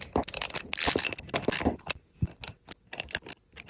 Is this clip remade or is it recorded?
recorded